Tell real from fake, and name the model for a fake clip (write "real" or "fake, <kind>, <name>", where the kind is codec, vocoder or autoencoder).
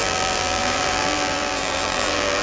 fake, vocoder, BigVGAN v2